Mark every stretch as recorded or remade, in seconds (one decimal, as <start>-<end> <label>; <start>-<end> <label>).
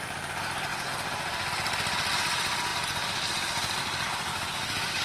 0.0-4.3 recorded; 4.3-5.0 remade